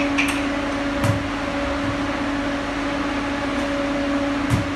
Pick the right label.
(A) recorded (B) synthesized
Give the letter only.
A